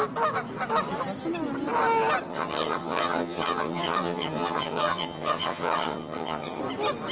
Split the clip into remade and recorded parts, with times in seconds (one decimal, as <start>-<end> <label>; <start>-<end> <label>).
0.0-2.3 recorded; 2.3-6.6 remade; 6.6-7.1 recorded